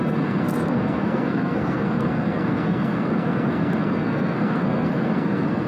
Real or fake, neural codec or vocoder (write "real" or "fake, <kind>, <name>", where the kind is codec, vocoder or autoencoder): fake, codec, SNAC